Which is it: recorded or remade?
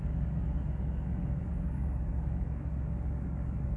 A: remade